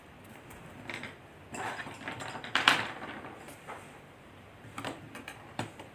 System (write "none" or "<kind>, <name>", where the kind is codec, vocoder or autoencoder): vocoder, BigVGAN v2